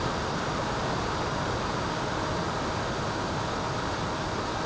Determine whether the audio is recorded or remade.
recorded